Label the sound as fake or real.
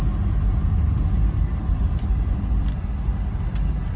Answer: real